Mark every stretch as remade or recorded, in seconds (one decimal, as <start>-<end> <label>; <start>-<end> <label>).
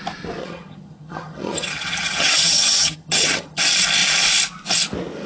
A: 0.0-0.4 recorded; 0.4-3.6 remade; 3.6-5.3 recorded